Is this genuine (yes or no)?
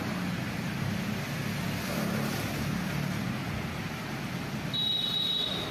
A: yes